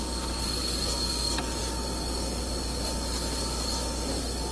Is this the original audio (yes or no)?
yes